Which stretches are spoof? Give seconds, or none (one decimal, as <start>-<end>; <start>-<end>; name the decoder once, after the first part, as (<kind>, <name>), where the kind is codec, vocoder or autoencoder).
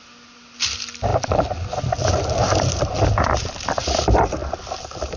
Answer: none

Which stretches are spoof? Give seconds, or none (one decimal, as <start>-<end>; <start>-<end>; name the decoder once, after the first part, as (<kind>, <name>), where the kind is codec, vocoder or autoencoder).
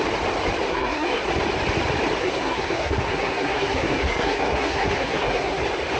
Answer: 0.7-1.2 (codec, SNAC); 2.2-5.6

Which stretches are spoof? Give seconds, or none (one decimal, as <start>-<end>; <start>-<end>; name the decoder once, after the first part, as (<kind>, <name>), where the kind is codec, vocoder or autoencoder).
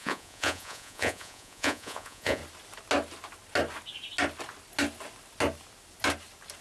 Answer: 0.0-2.4 (vocoder, Vocos)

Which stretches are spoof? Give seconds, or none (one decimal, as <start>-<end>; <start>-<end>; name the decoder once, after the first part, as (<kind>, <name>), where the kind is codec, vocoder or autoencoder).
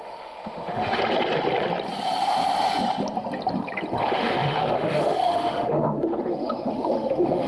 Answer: 0.0-1.0 (autoencoder, DAC-VAE); 4.0-7.5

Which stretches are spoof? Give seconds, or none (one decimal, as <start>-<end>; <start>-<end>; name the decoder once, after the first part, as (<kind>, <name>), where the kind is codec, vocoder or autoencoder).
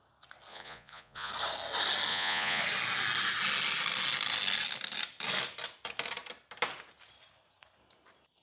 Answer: 0.5-1.3 (vocoder, Vocos); 2.1-2.6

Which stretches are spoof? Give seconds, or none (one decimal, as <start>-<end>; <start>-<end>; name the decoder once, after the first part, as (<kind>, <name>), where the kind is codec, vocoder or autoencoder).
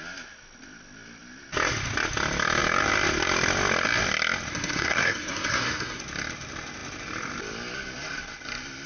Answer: 4.5-6.0 (codec, SNAC)